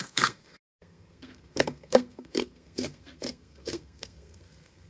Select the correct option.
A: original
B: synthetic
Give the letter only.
B